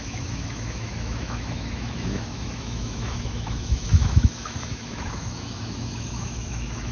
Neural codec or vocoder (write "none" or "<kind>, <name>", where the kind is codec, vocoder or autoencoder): autoencoder, DAC-VAE